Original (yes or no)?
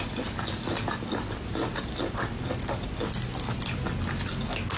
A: yes